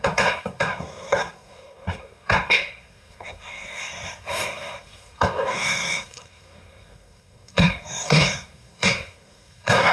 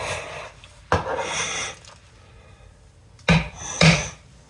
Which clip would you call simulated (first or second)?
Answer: first